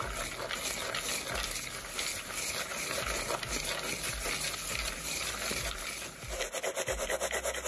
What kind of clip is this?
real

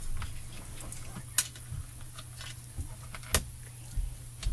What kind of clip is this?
real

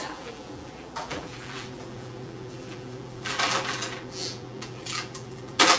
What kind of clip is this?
fake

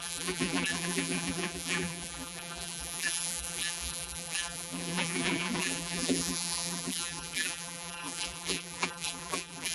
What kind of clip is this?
fake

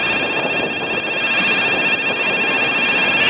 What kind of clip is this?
real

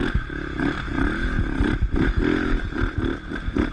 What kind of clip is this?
real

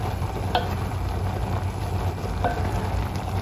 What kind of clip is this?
real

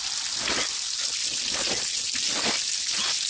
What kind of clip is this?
real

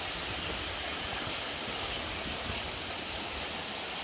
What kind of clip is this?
real